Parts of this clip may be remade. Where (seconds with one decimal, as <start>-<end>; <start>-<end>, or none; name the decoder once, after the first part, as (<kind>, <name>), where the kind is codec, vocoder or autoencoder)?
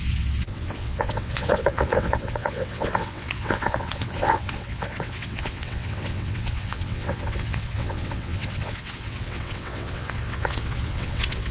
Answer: 0.0-11.5 (vocoder, WaveNeXt)